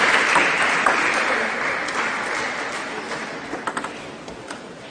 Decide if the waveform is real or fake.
real